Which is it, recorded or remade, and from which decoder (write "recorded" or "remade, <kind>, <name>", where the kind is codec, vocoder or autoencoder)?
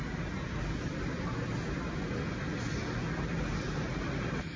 recorded